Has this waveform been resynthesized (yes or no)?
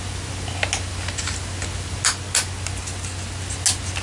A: no